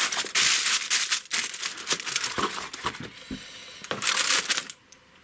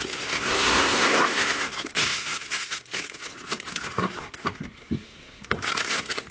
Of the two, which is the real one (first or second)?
first